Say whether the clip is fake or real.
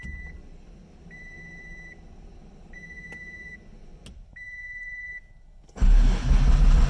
real